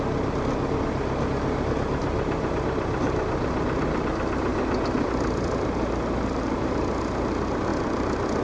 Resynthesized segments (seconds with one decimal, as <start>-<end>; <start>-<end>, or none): none